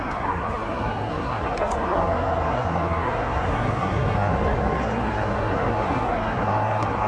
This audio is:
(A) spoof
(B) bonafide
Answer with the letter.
A